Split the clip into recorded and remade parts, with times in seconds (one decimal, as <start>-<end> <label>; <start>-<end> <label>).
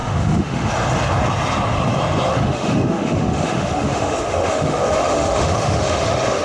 0.0-0.7 remade; 0.7-2.3 recorded; 2.3-6.4 remade